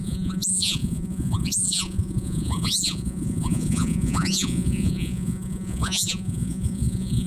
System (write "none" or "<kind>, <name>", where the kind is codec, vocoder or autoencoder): vocoder, Vocos